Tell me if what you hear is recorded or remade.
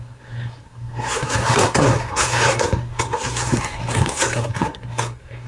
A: remade